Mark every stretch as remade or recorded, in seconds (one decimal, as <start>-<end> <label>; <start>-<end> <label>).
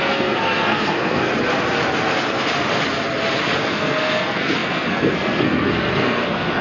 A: 0.0-1.3 remade; 1.3-3.6 recorded; 3.6-6.6 remade